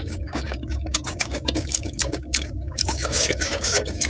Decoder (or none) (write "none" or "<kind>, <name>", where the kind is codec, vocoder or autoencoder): codec, DAC